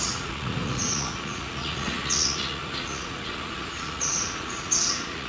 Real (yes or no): no